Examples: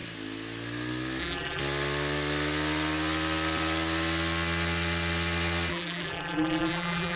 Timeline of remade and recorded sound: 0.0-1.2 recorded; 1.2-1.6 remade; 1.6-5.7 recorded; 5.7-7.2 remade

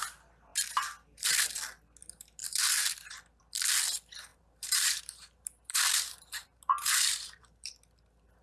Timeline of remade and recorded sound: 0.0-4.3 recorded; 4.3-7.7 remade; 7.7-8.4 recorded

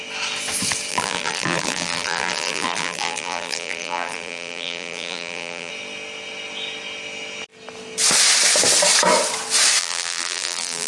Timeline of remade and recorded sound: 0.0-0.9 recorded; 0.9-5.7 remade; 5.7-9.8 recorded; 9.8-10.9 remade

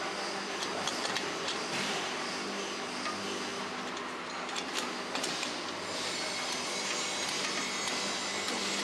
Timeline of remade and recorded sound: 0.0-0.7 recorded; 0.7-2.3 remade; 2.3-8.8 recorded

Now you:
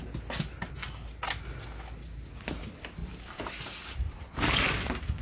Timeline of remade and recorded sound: 0.0-3.0 recorded; 3.0-4.3 remade; 4.3-5.2 recorded